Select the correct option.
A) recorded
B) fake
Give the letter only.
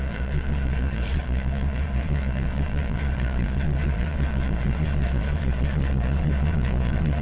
B